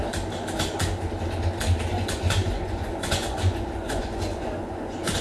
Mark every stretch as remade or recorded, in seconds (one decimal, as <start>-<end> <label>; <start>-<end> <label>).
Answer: 0.0-1.9 recorded; 1.9-5.2 remade